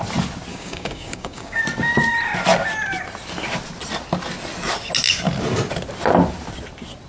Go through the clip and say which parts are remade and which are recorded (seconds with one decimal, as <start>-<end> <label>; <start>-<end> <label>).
0.0-0.5 recorded; 0.5-1.6 remade; 1.6-7.1 recorded